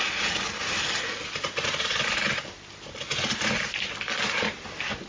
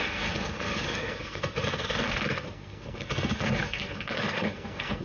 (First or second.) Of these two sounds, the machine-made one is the second